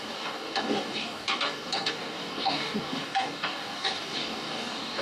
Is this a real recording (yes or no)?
no